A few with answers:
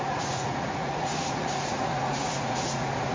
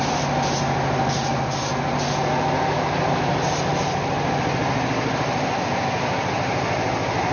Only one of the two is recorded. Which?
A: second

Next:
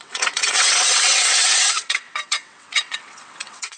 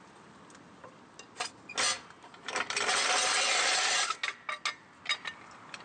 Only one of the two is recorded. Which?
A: second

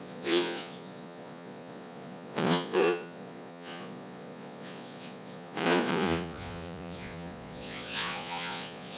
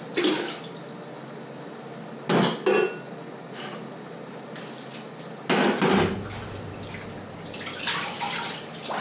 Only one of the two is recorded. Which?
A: second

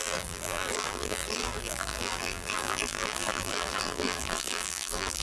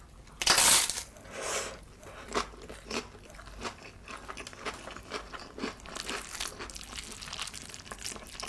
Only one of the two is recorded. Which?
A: second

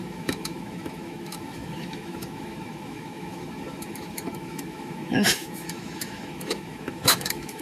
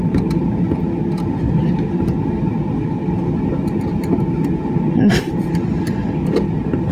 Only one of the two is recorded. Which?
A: second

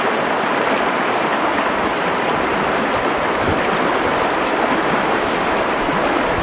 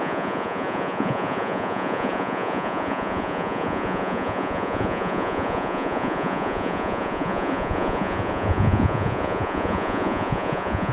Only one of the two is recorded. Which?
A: first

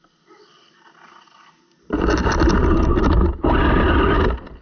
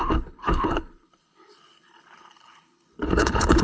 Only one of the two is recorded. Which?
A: first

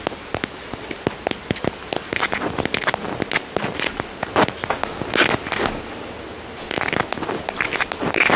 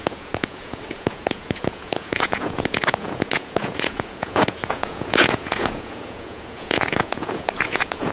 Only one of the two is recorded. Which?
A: first